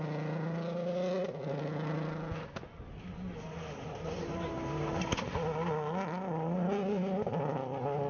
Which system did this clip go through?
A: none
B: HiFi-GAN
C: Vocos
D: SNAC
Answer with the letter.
A